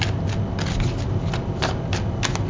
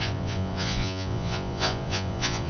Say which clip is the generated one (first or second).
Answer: second